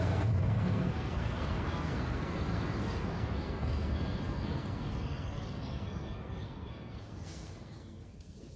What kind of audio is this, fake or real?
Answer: fake